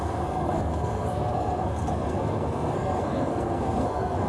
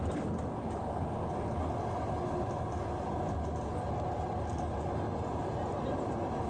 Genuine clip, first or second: second